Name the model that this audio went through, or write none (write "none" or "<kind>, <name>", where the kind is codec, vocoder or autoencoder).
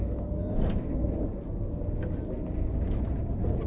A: none